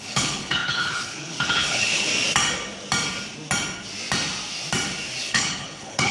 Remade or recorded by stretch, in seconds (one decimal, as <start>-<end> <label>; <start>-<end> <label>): 0.0-2.1 remade; 2.1-5.2 recorded; 5.2-6.1 remade